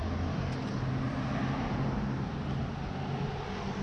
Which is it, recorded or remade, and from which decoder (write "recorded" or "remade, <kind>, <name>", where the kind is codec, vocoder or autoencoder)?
recorded